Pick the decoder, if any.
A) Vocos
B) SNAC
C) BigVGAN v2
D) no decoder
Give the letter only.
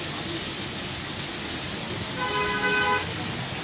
D